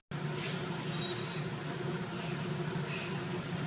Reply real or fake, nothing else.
real